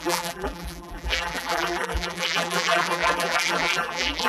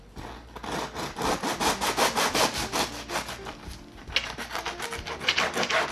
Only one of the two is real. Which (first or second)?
second